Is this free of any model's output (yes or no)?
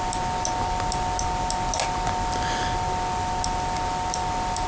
yes